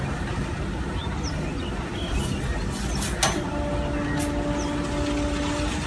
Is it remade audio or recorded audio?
recorded